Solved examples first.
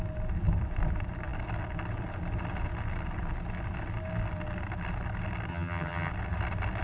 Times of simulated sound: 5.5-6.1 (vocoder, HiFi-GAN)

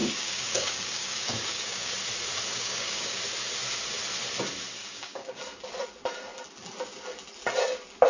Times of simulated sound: 0.0-1.9 (codec, DAC); 2.5-3.2; 4.8-5.4

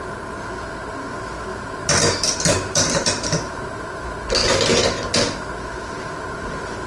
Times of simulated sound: 1.5-3.9 (vocoder, BigVGAN v2)

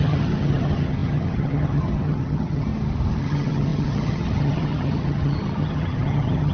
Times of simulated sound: 0.0-2.7 (vocoder, HiFi-GAN); 3.2-6.5

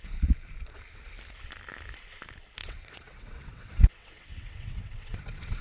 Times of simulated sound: 2.6-5.6 (vocoder, WaveNeXt)

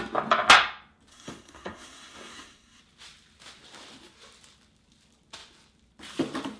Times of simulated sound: 1.1-2.8 (codec, SNAC)

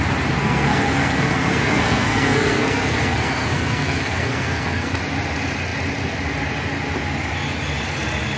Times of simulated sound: 0.4-5.0 (codec, SNAC)

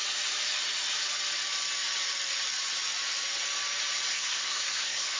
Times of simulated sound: 4.1-5.2 (codec, SNAC)